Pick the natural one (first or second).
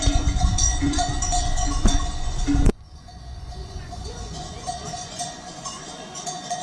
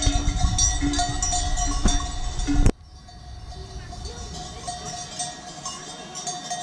second